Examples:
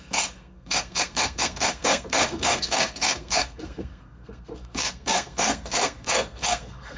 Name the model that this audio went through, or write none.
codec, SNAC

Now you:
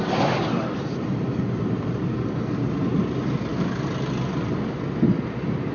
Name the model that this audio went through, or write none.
none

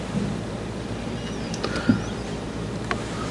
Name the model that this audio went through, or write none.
none